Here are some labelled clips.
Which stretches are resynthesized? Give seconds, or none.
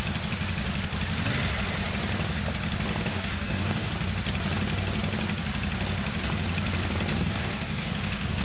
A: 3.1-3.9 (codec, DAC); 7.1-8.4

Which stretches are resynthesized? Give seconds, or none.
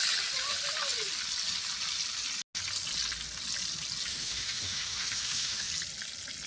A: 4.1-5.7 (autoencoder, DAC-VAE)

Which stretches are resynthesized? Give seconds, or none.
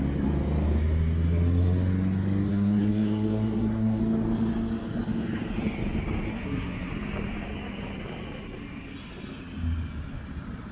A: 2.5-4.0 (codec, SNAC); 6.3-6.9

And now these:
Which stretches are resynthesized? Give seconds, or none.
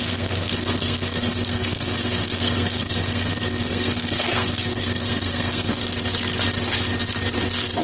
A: 0.0-5.8 (codec, SNAC)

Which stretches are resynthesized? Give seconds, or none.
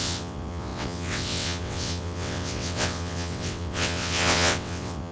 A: 0.0-5.1 (vocoder, WaveNeXt)